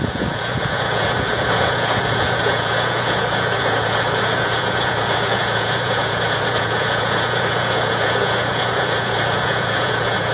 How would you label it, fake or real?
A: fake